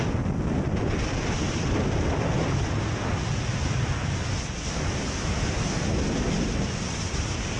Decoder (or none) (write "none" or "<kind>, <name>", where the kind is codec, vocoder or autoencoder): none